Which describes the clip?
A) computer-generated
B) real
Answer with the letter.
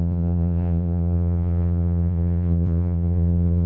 A